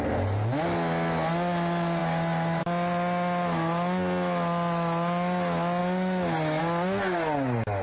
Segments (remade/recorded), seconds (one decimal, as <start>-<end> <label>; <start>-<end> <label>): 0.0-7.8 recorded